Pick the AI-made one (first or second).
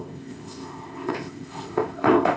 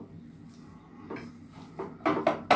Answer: first